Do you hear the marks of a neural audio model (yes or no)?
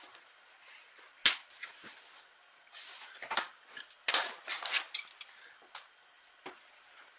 no